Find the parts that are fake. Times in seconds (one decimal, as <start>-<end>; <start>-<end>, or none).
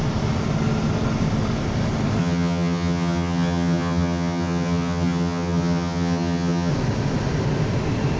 2.2-6.7